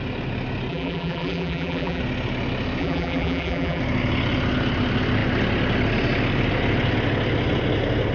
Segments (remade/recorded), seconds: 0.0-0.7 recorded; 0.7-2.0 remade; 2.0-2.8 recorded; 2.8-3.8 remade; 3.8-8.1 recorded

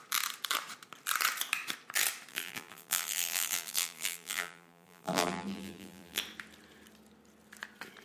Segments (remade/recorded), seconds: 0.0-2.3 recorded; 2.3-6.2 remade; 6.2-8.0 recorded

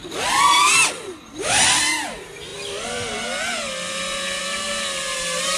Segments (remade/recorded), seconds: 0.0-0.6 remade; 0.6-5.6 recorded

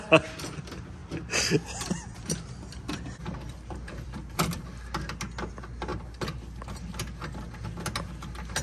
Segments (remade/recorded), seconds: 0.0-1.0 recorded; 1.0-4.6 remade; 4.6-8.6 recorded

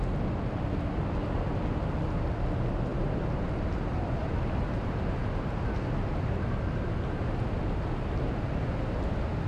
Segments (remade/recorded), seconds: 0.0-2.9 recorded; 2.9-4.9 remade; 4.9-9.5 recorded

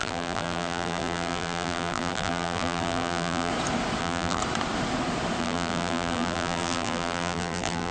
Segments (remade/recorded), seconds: 0.0-3.5 remade; 3.5-4.0 recorded; 4.0-4.4 remade; 4.4-5.4 recorded; 5.4-7.9 remade

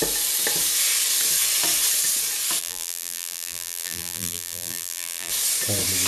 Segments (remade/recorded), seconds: 0.0-2.6 recorded; 2.6-5.3 remade; 5.3-6.1 recorded

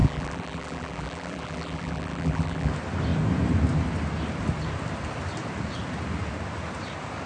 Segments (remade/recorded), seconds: 0.0-2.7 remade; 2.7-7.3 recorded